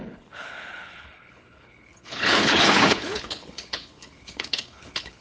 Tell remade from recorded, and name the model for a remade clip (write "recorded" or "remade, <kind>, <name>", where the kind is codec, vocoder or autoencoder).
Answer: remade, codec, HILCodec